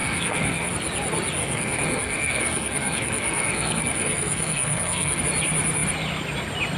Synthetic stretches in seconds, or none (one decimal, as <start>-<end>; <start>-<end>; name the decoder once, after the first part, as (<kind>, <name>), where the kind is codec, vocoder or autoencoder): 0.0-0.7 (codec, SNAC); 1.4-5.2